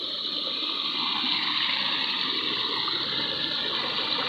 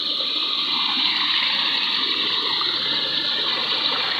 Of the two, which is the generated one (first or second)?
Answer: second